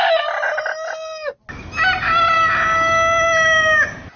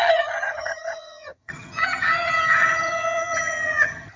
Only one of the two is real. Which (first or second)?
first